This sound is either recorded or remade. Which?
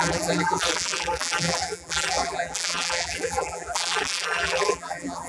remade